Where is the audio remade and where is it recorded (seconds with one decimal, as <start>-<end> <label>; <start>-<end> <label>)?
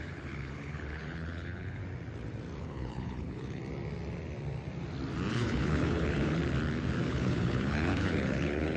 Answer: 0.0-1.8 remade; 1.8-2.6 recorded; 2.6-3.6 remade; 3.6-5.3 recorded; 5.3-6.4 remade; 6.4-7.1 recorded; 7.1-8.8 remade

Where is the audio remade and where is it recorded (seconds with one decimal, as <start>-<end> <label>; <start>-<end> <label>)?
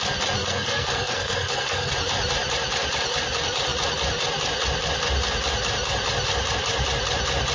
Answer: 0.0-0.4 recorded; 0.4-1.9 remade; 1.9-7.5 recorded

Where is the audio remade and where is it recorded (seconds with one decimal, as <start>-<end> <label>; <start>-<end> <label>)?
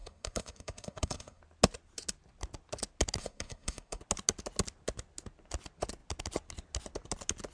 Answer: 0.0-1.4 remade; 1.4-3.2 recorded; 3.2-4.0 remade; 4.0-7.5 recorded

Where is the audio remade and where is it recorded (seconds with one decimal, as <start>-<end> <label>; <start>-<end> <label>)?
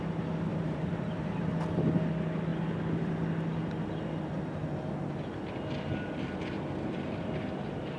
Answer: 0.0-0.5 recorded; 0.5-1.5 remade; 1.5-8.0 recorded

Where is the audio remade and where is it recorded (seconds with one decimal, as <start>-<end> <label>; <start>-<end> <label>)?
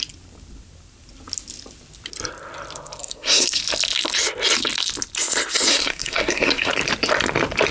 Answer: 0.0-3.0 recorded; 3.0-3.6 remade; 3.6-5.7 recorded; 5.7-6.7 remade; 6.7-7.7 recorded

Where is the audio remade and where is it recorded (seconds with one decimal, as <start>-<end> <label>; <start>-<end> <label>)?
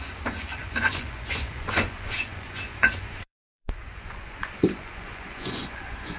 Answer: 0.0-6.2 remade